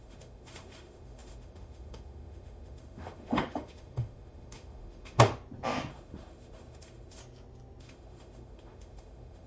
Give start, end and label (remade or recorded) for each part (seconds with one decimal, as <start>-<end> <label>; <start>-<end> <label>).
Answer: 0.0-5.3 remade; 5.3-5.9 recorded; 5.9-7.2 remade; 7.2-7.8 recorded; 7.8-9.5 remade